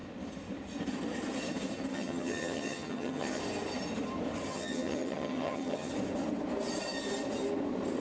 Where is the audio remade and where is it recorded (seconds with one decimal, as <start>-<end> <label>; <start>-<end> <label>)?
0.0-1.9 recorded; 1.9-3.4 remade; 3.4-4.5 recorded; 4.5-5.9 remade; 5.9-8.0 recorded